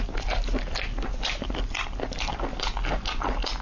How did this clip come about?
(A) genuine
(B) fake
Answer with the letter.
A